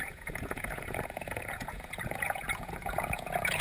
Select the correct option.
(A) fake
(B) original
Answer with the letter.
A